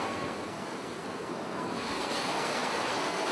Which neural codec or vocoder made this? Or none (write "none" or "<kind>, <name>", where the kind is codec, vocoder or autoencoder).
codec, SNAC